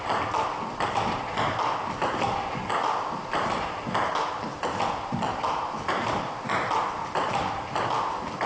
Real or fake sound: real